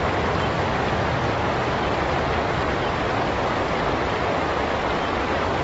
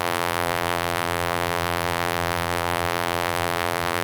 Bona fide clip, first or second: first